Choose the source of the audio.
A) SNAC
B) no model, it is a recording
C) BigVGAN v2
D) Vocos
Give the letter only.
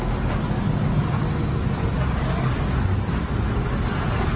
B